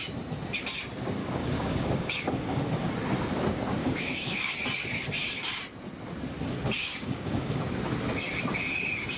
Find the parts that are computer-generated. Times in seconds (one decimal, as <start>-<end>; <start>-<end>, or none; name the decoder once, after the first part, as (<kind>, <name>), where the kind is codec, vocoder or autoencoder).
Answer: 1.2-2.9 (codec, DAC); 3.8-4.5; 6.8-7.6